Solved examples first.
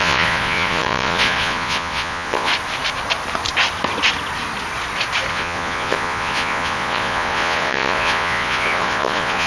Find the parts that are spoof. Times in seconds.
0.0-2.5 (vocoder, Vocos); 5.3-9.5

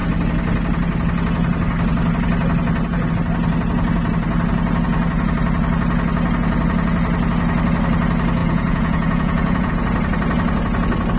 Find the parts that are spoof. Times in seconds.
8.4-9.7 (vocoder, Vocos)

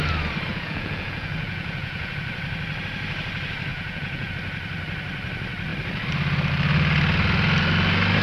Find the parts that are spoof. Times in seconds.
0.5-2.1 (vocoder, Vocos); 3.7-4.3

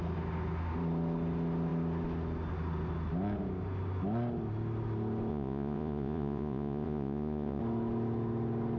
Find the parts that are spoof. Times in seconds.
5.3-7.6 (vocoder, Vocos)

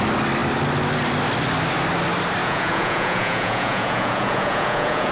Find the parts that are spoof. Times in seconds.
2.4-5.1 (vocoder, Vocos)